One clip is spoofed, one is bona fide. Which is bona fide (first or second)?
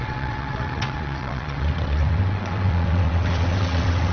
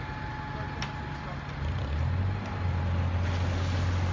second